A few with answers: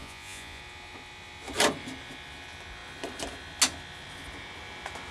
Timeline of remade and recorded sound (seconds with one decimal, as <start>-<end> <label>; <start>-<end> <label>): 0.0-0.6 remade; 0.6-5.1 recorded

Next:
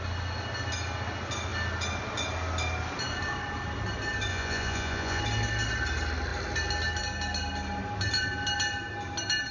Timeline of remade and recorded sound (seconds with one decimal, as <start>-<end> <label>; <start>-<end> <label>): 0.0-4.3 recorded; 4.3-5.2 remade; 5.2-9.5 recorded

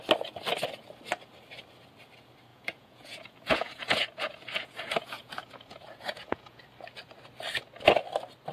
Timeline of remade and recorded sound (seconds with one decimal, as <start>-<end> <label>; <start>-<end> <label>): 0.0-2.5 recorded; 2.5-6.6 remade; 6.6-8.5 recorded

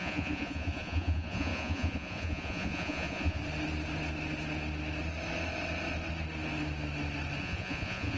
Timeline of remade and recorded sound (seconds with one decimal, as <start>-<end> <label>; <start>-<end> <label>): 0.0-3.4 remade; 3.4-7.4 recorded; 7.4-8.2 remade